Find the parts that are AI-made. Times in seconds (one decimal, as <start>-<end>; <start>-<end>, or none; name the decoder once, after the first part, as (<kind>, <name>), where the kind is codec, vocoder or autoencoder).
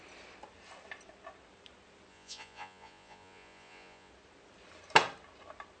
2.1-4.1 (vocoder, Vocos)